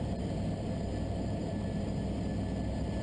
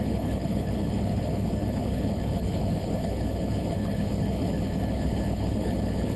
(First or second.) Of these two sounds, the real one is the first